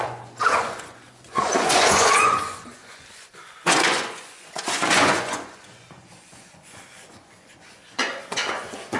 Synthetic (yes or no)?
yes